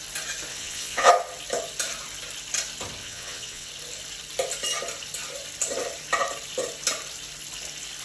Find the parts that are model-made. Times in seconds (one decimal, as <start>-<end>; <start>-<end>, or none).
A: 0.5-1.1; 3.0-3.7